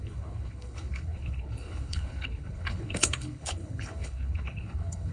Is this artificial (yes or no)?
yes